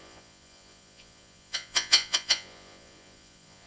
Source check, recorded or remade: remade